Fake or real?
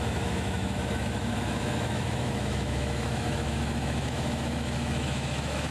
fake